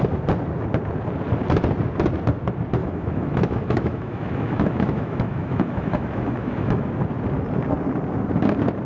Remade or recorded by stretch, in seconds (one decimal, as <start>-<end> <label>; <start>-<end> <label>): 0.0-2.8 recorded; 2.8-6.9 remade; 6.9-8.8 recorded